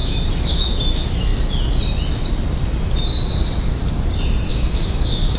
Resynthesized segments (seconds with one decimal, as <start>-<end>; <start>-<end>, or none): 0.0-1.3; 4.5-5.4